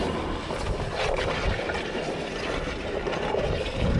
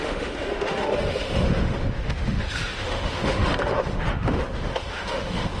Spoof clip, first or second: second